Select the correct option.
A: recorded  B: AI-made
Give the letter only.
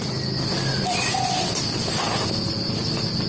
A